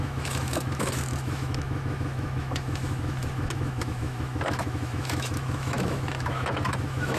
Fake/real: fake